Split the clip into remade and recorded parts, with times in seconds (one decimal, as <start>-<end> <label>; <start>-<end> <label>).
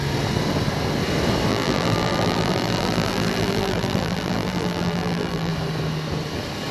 0.0-1.5 recorded; 1.5-5.5 remade; 5.5-6.7 recorded